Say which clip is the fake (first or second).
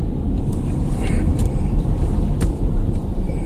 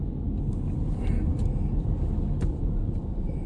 first